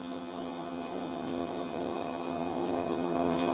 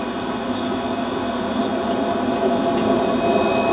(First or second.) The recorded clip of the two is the second